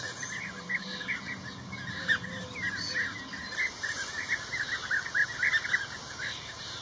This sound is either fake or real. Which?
real